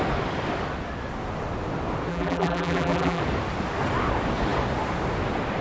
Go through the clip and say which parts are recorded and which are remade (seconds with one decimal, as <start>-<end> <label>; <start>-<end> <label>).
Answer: 0.0-2.1 recorded; 2.1-3.2 remade; 3.2-5.6 recorded